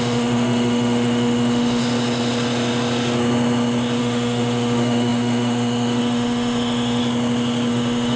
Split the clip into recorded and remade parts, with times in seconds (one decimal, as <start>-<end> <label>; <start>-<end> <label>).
0.0-1.8 remade; 1.8-4.0 recorded; 4.0-7.0 remade; 7.0-7.7 recorded; 7.7-8.2 remade